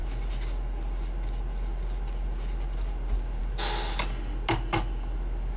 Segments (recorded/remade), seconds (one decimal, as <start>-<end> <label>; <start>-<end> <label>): 0.0-5.6 recorded